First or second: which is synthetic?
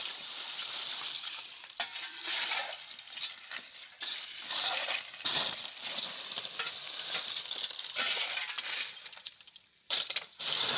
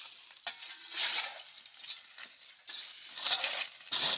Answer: first